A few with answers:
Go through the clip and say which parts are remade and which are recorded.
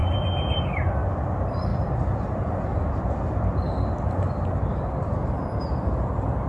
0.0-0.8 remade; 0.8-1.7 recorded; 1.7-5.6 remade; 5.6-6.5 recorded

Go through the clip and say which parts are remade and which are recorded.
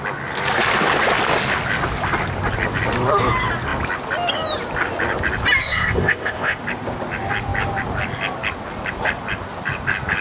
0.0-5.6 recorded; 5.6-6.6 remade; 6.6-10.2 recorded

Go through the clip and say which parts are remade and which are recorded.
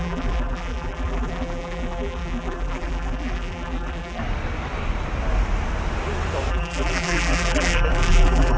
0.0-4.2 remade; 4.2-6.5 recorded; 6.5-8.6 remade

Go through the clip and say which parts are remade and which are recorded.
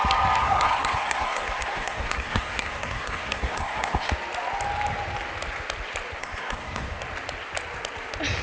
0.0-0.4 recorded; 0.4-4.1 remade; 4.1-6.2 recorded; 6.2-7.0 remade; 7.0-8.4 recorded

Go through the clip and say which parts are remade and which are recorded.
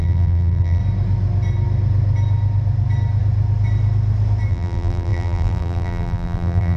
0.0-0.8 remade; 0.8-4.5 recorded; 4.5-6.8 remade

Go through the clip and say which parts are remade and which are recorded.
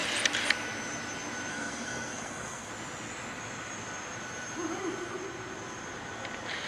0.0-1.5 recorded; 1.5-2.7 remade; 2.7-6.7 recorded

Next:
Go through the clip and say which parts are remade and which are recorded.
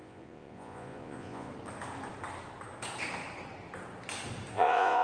0.0-1.5 remade; 1.5-4.5 recorded; 4.5-5.0 remade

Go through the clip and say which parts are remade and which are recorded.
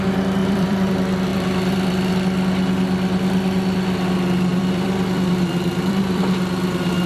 0.0-0.4 recorded; 0.4-0.9 remade; 0.9-1.3 recorded; 1.3-2.1 remade; 2.1-4.5 recorded; 4.5-6.2 remade; 6.2-7.1 recorded